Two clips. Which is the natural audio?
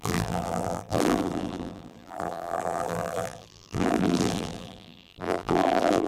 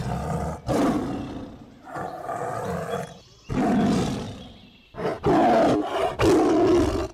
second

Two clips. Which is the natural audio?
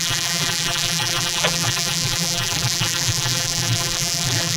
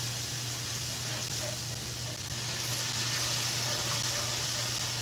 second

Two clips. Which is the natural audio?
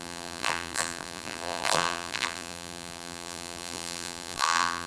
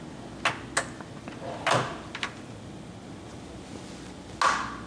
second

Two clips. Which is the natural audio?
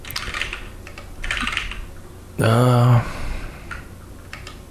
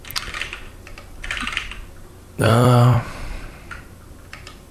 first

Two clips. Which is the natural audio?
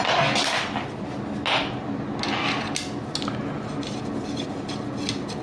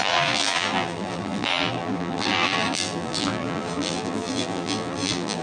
first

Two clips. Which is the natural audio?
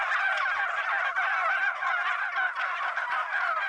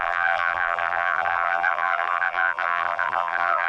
first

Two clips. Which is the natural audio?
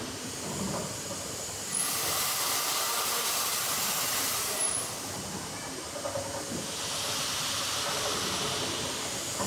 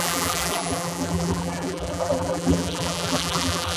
first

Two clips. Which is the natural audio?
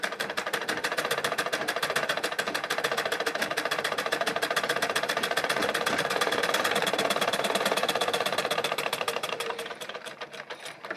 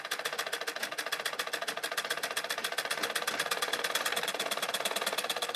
second